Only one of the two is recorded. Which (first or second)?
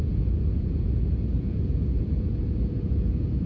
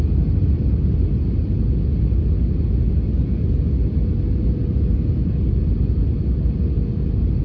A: second